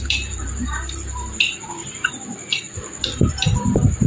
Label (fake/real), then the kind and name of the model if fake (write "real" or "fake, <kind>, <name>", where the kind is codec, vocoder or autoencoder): fake, vocoder, BigVGAN v2